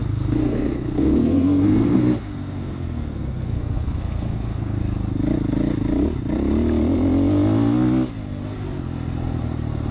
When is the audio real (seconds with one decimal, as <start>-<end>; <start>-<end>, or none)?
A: 4.8-9.9